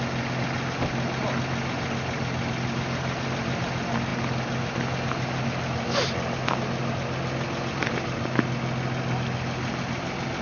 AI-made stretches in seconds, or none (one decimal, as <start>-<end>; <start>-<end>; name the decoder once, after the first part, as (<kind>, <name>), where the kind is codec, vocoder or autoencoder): none